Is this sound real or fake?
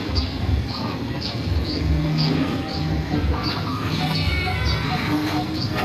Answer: fake